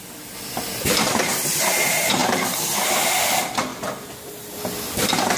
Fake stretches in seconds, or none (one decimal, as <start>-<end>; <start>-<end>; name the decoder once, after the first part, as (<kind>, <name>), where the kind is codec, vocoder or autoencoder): none

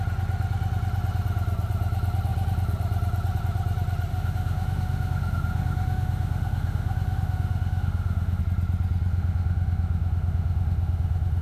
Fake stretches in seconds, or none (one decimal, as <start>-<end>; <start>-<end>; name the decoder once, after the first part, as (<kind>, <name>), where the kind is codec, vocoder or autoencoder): 4.1-8.4 (autoencoder, DAC-VAE); 9.1-11.4

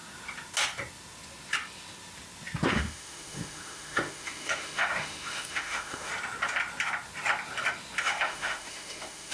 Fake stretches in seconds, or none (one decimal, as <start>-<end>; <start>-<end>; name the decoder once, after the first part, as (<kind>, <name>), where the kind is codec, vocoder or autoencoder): 2.7-6.1 (autoencoder, DAC-VAE); 8.0-9.3

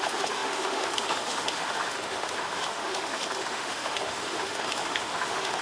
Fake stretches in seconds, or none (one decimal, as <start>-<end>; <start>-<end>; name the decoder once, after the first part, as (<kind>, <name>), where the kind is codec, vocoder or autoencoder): 0.0-5.6 (autoencoder, DAC-VAE)